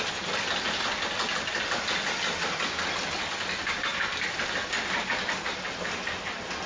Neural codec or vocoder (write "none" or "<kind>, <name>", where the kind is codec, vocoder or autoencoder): none